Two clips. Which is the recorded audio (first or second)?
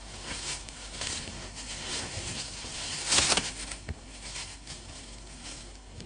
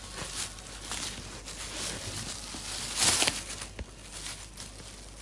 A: second